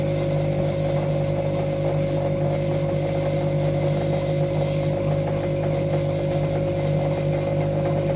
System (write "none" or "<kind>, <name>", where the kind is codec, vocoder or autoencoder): none